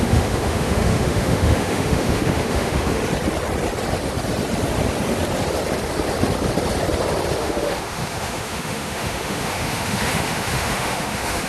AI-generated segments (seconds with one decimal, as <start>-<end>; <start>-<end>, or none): 0.0-3.0; 7.4-11.5